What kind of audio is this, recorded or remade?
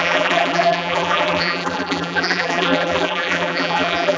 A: remade